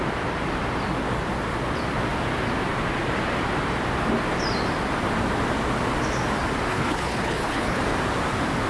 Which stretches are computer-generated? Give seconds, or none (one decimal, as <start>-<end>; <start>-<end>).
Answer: 6.7-7.8